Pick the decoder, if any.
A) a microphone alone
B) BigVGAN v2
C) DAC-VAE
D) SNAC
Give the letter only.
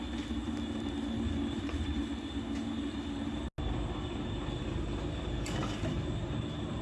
A